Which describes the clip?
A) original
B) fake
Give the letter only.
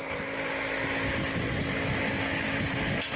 A